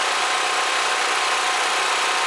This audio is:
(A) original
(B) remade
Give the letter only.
A